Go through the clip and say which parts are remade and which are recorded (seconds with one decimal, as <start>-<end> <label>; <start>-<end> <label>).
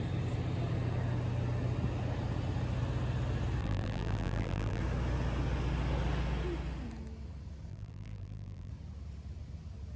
0.0-3.6 recorded; 3.6-4.8 remade; 4.8-7.7 recorded; 7.7-8.7 remade; 8.7-10.0 recorded